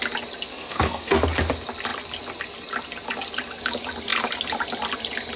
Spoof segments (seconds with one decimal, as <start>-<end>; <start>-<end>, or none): 0.5-1.2